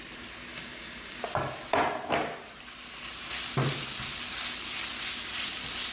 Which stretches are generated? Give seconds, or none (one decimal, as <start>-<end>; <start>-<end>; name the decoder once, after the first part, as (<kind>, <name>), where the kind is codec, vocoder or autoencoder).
0.5-1.2 (codec, DAC)